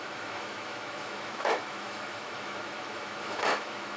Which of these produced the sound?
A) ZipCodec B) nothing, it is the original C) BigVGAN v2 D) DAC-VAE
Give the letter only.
D